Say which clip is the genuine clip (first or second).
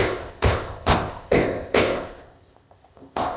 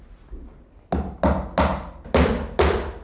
second